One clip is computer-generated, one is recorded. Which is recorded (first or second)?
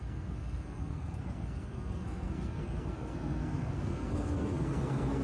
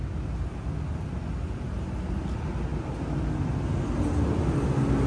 second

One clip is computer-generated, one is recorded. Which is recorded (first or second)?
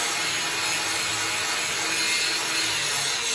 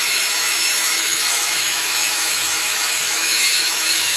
first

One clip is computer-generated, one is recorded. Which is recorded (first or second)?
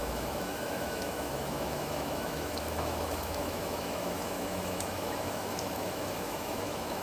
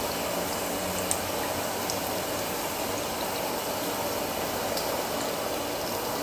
second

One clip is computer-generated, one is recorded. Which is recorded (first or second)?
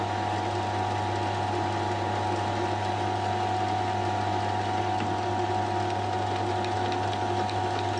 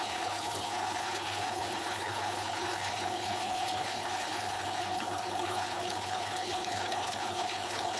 first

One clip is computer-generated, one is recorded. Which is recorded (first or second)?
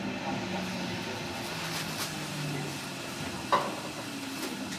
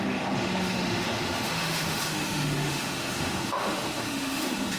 first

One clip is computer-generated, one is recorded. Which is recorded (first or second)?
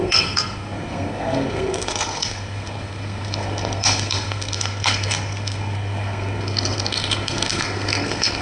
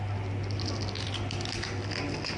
second